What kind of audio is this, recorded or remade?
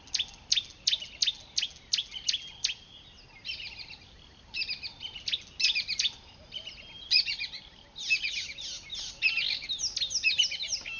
recorded